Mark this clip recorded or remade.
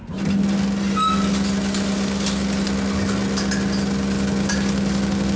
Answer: recorded